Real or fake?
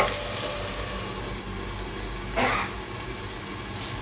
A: real